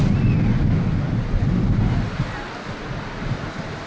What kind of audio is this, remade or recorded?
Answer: recorded